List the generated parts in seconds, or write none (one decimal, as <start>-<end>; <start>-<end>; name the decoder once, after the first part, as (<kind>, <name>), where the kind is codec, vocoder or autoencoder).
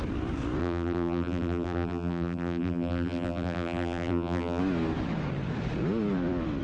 0.6-4.6 (vocoder, BigVGAN v2)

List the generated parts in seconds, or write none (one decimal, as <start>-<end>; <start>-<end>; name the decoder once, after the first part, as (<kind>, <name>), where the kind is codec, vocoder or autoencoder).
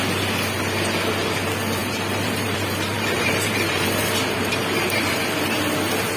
1.8-5.4 (vocoder, BigVGAN v2)